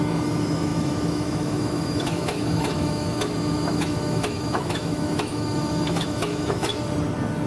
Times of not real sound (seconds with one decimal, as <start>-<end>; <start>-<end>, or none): 0.0-6.7